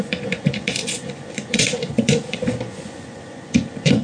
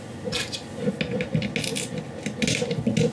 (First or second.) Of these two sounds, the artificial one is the first